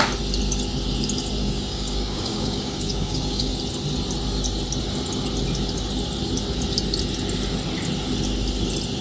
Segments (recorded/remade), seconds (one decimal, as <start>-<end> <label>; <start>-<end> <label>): 0.0-1.4 recorded; 1.4-3.5 remade; 3.5-9.0 recorded